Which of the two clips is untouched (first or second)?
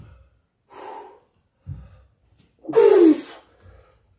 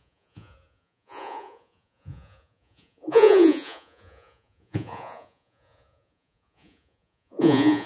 first